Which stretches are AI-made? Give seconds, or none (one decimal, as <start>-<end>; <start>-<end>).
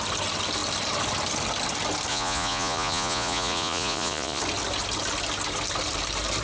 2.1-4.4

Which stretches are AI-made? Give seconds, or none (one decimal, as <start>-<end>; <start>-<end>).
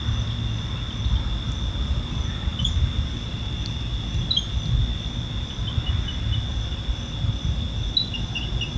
none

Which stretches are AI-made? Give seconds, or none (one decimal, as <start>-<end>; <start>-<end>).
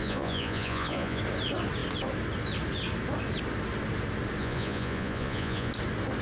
0.0-1.2; 4.4-5.7